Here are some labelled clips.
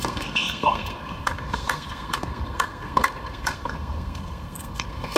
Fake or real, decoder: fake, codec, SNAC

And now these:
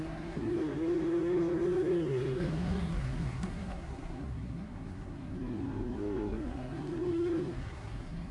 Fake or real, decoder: fake, codec, SNAC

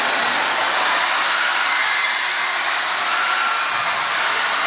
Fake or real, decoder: real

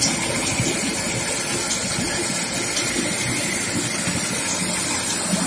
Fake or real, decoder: real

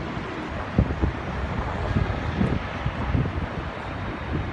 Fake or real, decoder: real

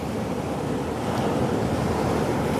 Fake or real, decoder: real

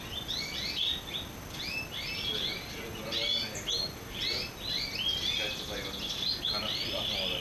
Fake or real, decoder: real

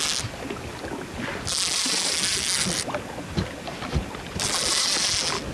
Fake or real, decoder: real